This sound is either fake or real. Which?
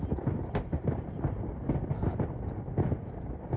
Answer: real